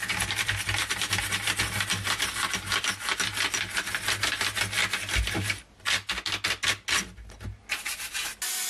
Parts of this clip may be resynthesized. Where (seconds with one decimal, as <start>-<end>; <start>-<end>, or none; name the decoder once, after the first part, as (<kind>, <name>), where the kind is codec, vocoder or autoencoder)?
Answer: none